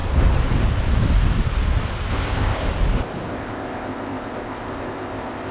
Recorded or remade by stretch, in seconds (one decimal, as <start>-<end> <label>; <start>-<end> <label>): 0.0-2.1 recorded; 2.1-2.7 remade; 2.7-3.3 recorded; 3.3-5.5 remade